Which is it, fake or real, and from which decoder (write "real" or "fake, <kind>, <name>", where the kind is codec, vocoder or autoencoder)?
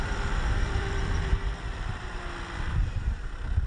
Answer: fake, vocoder, BigVGAN v2